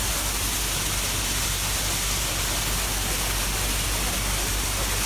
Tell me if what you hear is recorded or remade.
recorded